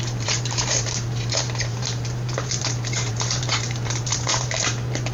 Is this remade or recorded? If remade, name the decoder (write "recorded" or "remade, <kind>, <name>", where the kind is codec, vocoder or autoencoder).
remade, vocoder, BigVGAN v2